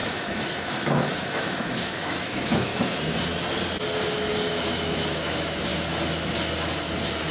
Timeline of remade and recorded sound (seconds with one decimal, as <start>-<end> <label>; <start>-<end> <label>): 0.0-2.7 remade; 2.7-4.5 recorded; 4.5-5.7 remade; 5.7-7.3 recorded